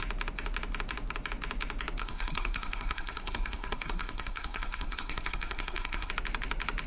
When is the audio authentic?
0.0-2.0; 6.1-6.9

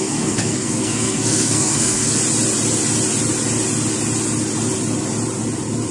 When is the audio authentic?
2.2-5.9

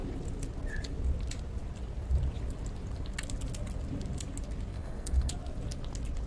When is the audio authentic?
0.0-4.7; 5.3-6.3

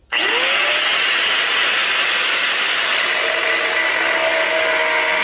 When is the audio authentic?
0.0-5.2

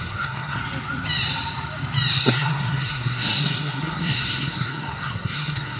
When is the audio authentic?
0.6-2.2

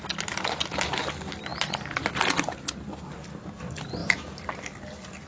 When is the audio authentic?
0.0-5.3